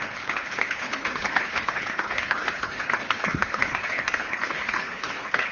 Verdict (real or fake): fake